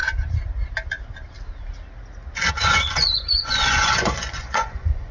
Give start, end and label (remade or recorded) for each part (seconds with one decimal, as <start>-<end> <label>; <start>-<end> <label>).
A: 0.0-2.5 recorded; 2.5-5.1 remade